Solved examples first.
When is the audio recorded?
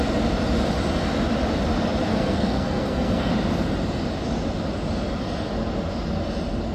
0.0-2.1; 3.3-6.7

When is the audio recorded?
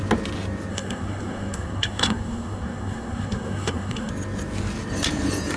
0.0-0.7; 4.1-5.6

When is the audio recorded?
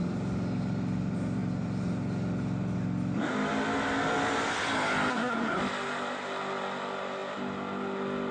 0.0-5.1; 5.6-8.3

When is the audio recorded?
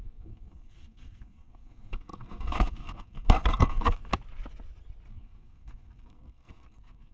4.1-5.1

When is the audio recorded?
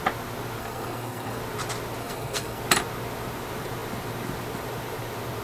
0.0-0.6; 1.4-2.0; 2.6-5.4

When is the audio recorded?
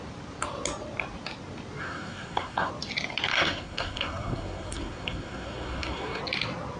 0.0-1.8; 2.7-3.3; 6.2-6.8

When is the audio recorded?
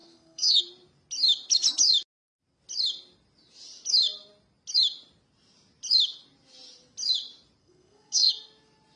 0.6-7.6; 8.3-9.0